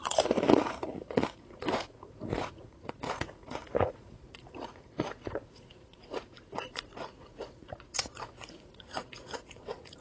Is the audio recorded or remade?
remade